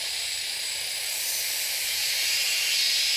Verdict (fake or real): real